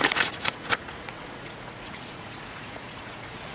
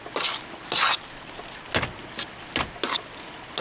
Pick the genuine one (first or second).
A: second